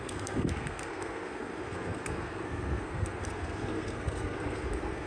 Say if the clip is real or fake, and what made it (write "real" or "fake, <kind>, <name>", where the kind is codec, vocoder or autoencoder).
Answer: fake, codec, SNAC